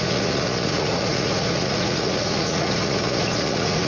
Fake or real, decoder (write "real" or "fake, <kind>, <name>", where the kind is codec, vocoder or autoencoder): fake, vocoder, Vocos